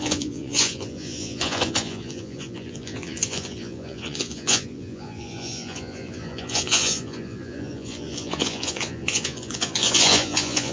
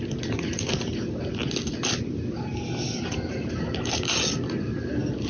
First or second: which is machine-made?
first